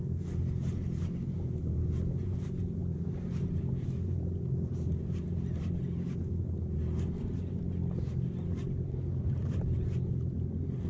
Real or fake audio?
real